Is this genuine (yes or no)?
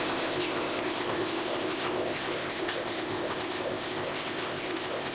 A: no